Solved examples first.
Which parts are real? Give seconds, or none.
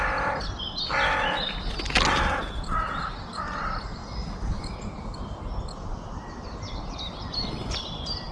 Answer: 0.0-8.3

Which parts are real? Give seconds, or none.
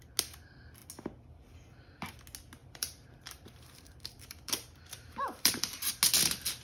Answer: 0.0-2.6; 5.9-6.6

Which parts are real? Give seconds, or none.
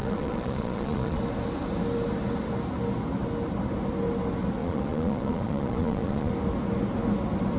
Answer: 1.2-4.6; 6.3-7.6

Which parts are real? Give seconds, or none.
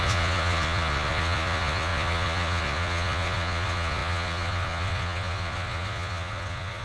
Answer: none